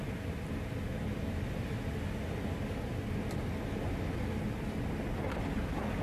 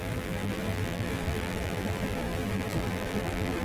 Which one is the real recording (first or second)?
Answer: first